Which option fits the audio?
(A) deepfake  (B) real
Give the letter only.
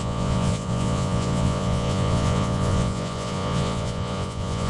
A